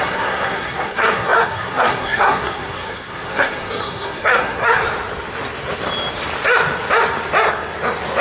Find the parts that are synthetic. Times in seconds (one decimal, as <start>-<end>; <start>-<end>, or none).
0.0-4.8